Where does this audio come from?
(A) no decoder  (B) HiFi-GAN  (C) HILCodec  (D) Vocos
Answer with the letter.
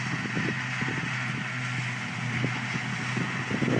A